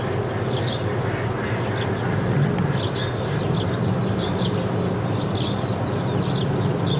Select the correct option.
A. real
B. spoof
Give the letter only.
A